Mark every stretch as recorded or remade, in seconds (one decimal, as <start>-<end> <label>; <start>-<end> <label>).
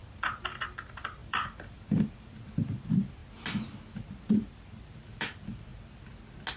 0.0-3.2 remade; 3.2-4.2 recorded; 4.2-5.7 remade; 5.7-6.6 recorded